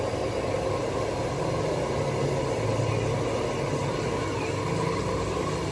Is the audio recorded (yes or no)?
yes